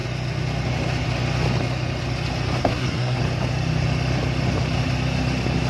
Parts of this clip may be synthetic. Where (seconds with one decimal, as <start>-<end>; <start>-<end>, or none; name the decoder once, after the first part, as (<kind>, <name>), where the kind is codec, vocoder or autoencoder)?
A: 2.6-3.2 (codec, SNAC)

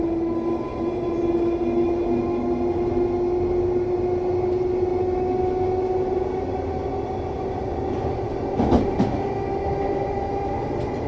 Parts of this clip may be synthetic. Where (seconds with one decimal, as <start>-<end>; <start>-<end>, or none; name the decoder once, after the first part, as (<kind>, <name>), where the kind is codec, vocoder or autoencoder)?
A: none

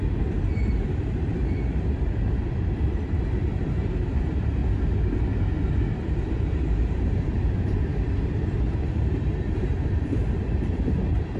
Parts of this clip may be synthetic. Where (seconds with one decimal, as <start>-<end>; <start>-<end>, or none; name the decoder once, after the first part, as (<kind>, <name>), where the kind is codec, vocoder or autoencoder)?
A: 0.0-4.6 (vocoder, BigVGAN v2); 5.6-11.4

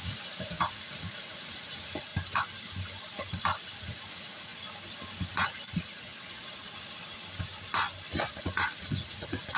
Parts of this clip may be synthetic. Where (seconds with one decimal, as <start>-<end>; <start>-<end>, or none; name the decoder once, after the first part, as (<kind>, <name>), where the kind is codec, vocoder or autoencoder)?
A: 0.0-2.1 (vocoder, Vocos); 3.8-4.5; 5.3-6.1; 8.4-9.6

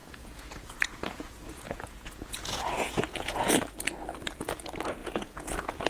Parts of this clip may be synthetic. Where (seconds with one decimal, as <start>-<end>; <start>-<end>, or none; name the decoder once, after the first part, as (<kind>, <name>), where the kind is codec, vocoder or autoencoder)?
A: 0.0-3.5 (vocoder, Vocos); 5.0-5.9

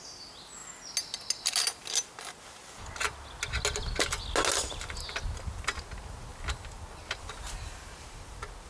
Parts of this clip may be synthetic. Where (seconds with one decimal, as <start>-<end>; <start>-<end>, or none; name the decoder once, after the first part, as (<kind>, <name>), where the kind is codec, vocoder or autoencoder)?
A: none

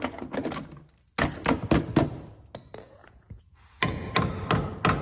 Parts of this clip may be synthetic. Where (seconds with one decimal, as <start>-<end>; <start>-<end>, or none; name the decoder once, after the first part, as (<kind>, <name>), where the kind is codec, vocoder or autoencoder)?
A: 3.0-4.1 (vocoder, Vocos)

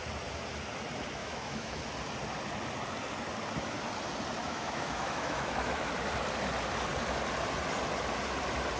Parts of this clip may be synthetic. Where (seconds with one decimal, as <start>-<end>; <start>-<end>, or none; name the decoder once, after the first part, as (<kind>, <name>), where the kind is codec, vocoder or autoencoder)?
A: 1.2-1.8 (autoencoder, DAC-VAE); 4.4-5.9